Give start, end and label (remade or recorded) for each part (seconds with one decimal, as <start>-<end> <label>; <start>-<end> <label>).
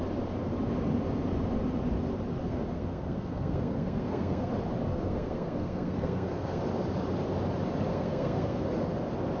0.0-2.4 recorded; 2.4-4.5 remade; 4.5-4.9 recorded; 4.9-6.6 remade; 6.6-7.9 recorded; 7.9-8.6 remade; 8.6-9.4 recorded